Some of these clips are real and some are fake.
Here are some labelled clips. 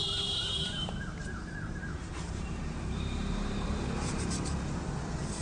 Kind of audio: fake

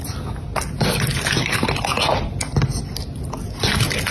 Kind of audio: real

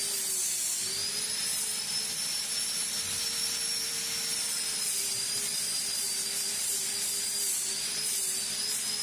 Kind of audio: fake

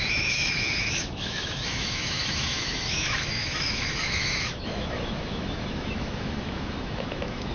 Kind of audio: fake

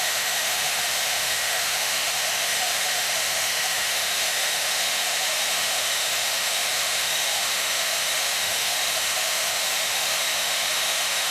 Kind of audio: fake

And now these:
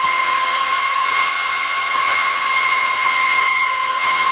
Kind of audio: fake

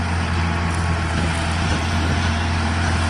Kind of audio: real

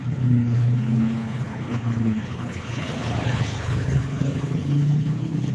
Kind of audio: fake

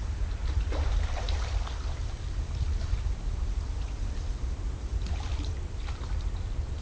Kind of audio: real